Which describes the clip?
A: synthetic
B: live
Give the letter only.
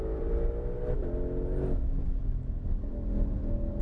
B